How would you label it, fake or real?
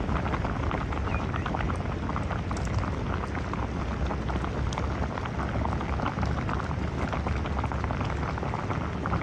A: real